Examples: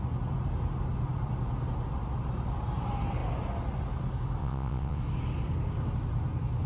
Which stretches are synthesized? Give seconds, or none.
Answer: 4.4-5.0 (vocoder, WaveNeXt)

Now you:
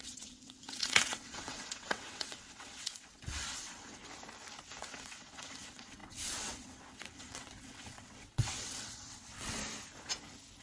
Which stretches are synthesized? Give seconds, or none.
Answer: 0.0-4.0 (vocoder, WaveNeXt); 4.8-9.6

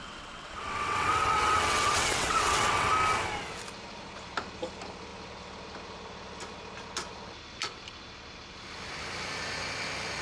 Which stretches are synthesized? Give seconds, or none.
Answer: 0.0-2.9 (vocoder, WaveNeXt)

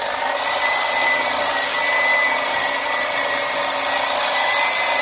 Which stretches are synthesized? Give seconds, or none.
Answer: none

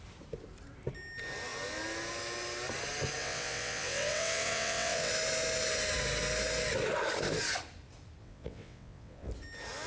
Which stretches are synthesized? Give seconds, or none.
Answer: 3.2-5.1 (vocoder, WaveNeXt); 8.2-9.3